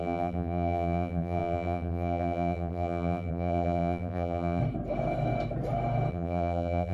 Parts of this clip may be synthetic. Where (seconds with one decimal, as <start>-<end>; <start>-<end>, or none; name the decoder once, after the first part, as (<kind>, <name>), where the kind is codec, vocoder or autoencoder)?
0.0-4.6 (vocoder, BigVGAN v2); 6.1-6.9